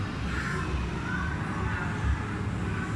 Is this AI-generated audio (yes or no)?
no